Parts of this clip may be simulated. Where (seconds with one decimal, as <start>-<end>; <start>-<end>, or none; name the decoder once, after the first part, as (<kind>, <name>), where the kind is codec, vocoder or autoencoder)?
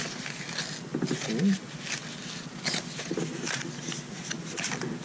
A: none